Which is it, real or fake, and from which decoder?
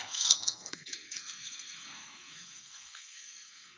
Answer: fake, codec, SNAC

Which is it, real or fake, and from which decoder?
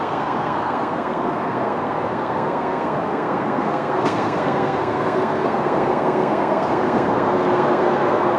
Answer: fake, codec, SNAC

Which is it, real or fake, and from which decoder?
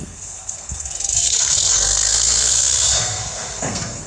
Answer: fake, codec, SNAC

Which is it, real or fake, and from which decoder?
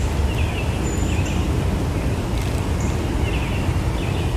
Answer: real